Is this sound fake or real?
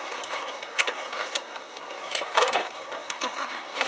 fake